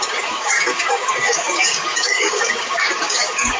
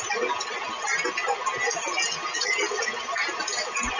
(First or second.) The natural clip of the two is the second